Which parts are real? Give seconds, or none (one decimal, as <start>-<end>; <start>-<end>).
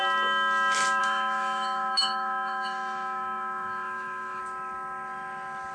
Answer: 0.0-1.0; 4.4-5.7